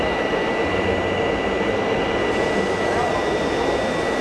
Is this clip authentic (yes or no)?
yes